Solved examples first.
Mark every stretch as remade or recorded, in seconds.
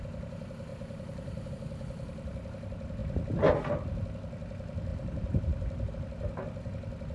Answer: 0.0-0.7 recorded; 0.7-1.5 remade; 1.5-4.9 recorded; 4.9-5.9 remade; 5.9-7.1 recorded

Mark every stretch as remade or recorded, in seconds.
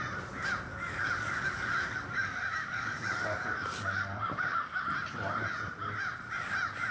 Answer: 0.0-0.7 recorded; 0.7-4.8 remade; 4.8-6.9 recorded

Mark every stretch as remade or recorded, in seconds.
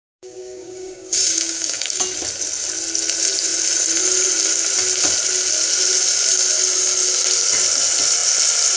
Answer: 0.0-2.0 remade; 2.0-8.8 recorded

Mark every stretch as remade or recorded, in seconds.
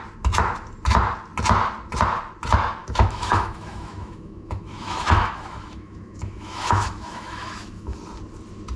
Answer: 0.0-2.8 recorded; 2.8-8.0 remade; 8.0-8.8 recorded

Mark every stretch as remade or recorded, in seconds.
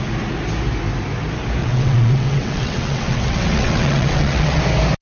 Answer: 0.0-1.6 recorded; 1.6-4.6 remade; 4.6-5.0 recorded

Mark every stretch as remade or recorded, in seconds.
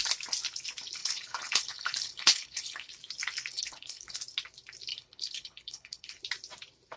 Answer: 0.0-1.0 recorded; 1.0-2.9 remade; 2.9-3.5 recorded; 3.5-4.2 remade; 4.2-4.9 recorded; 4.9-6.2 remade; 6.2-7.0 recorded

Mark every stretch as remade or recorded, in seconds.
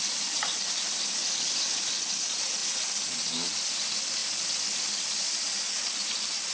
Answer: 0.0-6.5 recorded